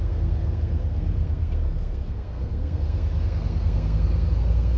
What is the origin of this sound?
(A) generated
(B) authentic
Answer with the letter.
A